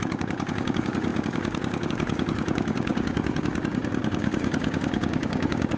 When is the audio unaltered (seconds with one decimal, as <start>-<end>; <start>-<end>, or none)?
none